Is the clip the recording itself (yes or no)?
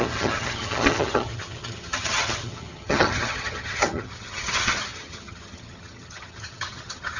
no